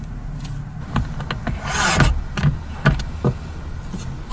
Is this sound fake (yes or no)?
no